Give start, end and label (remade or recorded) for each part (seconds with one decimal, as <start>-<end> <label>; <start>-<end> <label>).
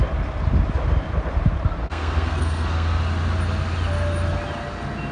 0.0-1.8 recorded; 1.8-3.0 remade; 3.0-5.1 recorded